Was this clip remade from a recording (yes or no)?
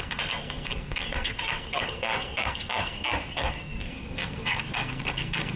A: yes